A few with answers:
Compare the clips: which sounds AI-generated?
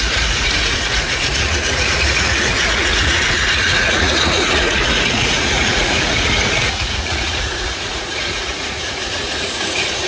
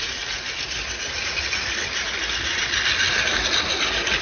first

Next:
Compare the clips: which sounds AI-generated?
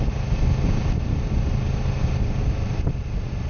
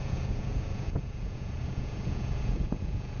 second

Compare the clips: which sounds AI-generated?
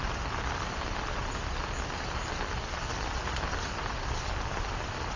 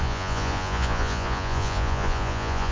second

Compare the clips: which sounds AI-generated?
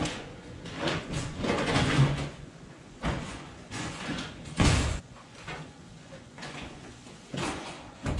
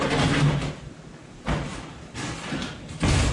first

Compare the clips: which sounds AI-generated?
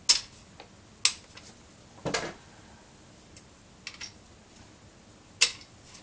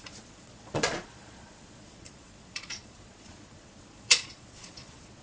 second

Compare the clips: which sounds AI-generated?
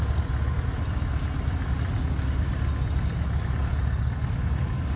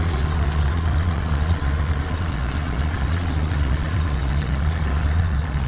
second